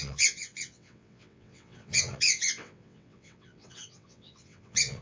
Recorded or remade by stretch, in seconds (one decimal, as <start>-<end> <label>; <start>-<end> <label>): 0.0-5.0 remade